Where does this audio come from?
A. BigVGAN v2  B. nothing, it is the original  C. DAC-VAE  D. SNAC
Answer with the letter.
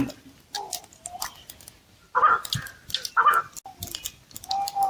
B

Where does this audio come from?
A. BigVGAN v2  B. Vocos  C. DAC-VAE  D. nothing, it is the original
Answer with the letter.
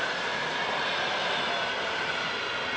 D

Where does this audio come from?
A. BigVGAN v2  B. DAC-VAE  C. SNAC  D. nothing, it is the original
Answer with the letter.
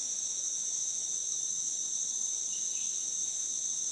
B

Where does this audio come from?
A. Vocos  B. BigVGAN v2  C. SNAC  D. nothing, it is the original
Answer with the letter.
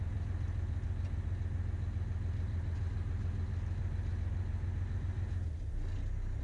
D